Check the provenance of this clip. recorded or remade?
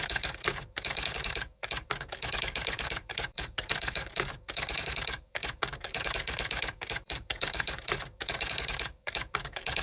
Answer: remade